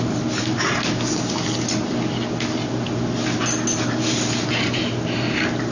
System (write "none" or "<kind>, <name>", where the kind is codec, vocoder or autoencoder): none